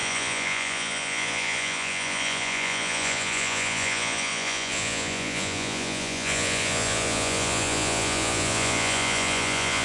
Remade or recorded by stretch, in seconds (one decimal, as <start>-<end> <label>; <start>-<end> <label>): 0.0-9.8 remade